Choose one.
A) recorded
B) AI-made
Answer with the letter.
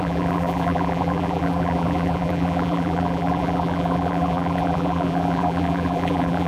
B